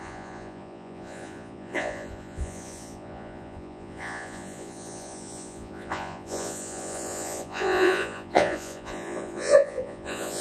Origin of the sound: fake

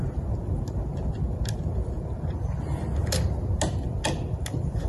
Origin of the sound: real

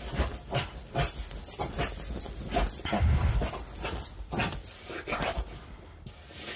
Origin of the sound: real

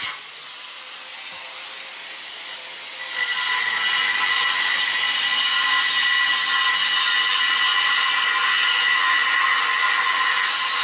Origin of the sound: real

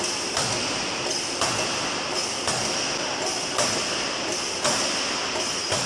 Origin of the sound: real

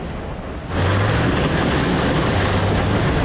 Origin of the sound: real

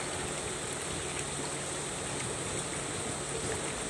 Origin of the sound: real